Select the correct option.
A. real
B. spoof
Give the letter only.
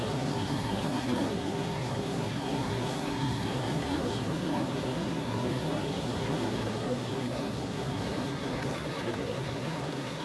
B